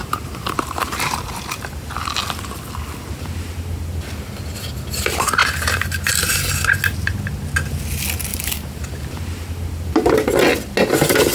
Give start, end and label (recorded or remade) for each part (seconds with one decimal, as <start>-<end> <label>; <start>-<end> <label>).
0.0-1.4 remade; 1.4-5.4 recorded; 5.4-6.1 remade; 6.1-8.3 recorded; 8.3-8.8 remade; 8.8-11.3 recorded